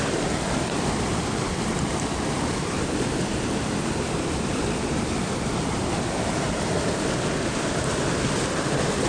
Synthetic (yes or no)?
yes